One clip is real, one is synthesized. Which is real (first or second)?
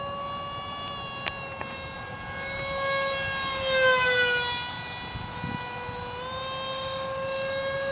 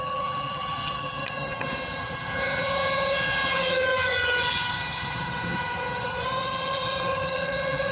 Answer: first